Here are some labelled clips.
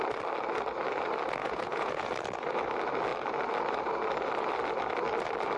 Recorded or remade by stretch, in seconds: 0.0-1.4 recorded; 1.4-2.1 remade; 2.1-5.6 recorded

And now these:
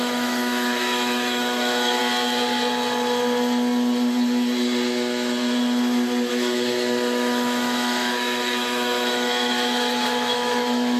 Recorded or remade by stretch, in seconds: 0.0-2.0 remade; 2.0-6.3 recorded; 6.3-11.0 remade

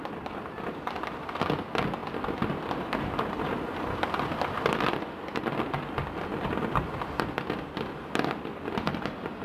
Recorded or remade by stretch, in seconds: 0.0-9.4 recorded

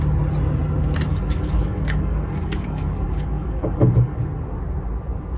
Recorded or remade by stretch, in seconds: 0.0-1.1 recorded; 1.1-4.3 remade; 4.3-5.4 recorded

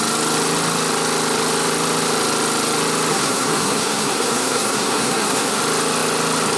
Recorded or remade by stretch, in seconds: 0.0-3.1 recorded; 3.1-5.6 remade; 5.6-6.6 recorded

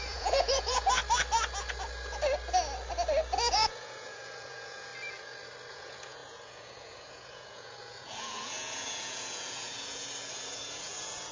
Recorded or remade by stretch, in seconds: 0.0-1.0 remade; 1.0-3.5 recorded; 3.5-4.9 remade; 4.9-5.7 recorded; 5.7-11.3 remade

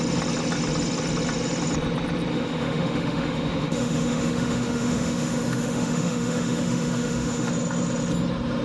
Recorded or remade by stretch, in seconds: 0.0-2.3 recorded; 2.3-7.5 remade; 7.5-8.6 recorded

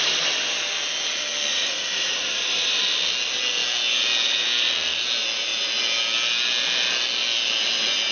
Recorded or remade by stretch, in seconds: 0.0-1.5 recorded; 1.5-2.8 remade; 2.8-8.1 recorded